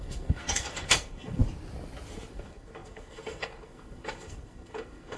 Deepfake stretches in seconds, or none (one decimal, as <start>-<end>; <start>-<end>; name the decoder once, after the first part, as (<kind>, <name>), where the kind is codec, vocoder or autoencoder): 0.0-1.4 (codec, SNAC); 2.3-5.2